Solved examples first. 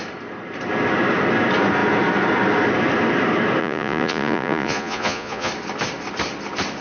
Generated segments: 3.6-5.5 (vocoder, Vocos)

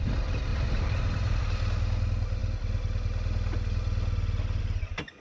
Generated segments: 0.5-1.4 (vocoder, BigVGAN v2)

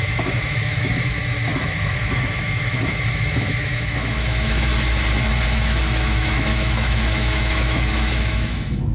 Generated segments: 0.0-4.7 (autoencoder, DAC-VAE); 5.5-8.9

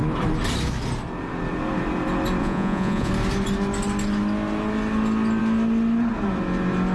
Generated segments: 2.4-3.1 (vocoder, Vocos)

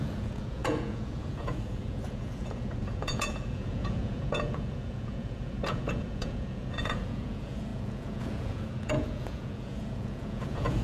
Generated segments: 0.0-10.8 (vocoder, Vocos)